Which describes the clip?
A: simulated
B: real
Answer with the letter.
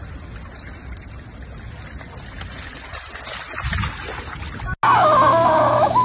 B